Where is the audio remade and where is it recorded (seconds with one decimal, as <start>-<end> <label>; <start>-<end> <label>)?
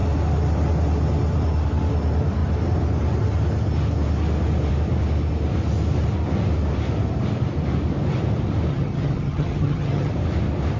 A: 0.0-8.7 recorded; 8.7-10.1 remade; 10.1-10.8 recorded